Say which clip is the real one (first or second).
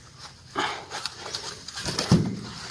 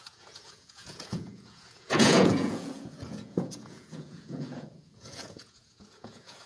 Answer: first